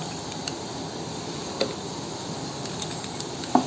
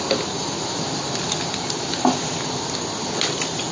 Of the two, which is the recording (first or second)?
second